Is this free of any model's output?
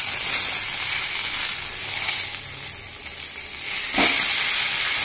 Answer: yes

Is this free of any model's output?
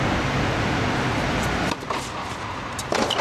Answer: no